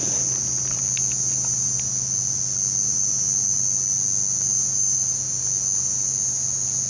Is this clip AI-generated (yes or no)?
no